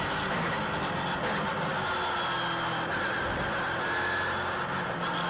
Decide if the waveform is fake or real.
real